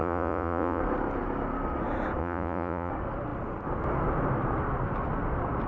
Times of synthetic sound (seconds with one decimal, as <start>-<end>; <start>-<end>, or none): 0.0-0.8; 2.2-2.9